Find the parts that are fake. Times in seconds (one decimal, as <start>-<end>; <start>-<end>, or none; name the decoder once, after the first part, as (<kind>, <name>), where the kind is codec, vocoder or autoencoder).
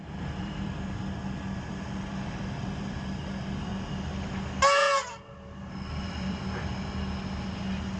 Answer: 0.0-0.7 (vocoder, BigVGAN v2); 1.7-3.7; 5.7-6.7